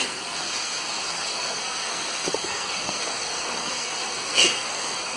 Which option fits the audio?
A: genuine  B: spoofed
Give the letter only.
B